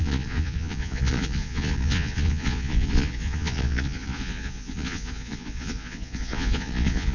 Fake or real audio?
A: fake